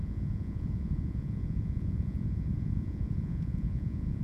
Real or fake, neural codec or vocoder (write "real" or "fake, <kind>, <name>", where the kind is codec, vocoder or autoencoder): fake, vocoder, Vocos